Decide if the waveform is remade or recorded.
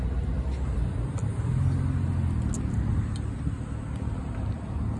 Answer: recorded